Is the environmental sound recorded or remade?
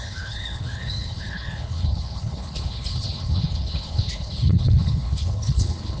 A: remade